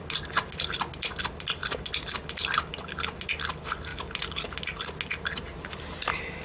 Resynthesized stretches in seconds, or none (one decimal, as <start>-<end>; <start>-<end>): 3.9-4.8